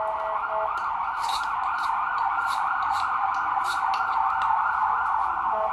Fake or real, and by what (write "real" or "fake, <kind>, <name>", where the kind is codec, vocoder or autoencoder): real